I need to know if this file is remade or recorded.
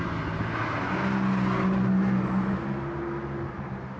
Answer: recorded